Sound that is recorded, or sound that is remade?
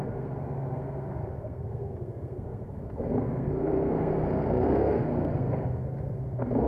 remade